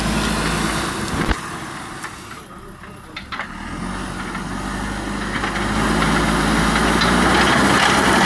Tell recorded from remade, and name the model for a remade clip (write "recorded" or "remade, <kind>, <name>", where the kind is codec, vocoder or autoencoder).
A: recorded